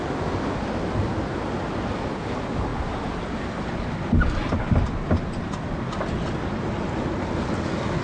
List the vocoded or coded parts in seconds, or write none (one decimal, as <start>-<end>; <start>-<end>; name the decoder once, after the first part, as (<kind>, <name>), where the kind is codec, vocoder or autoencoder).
none